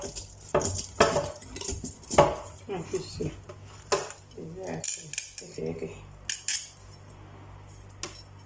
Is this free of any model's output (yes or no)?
yes